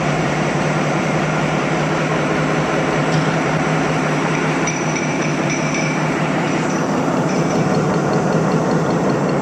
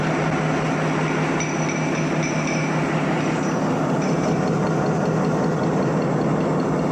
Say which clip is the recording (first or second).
second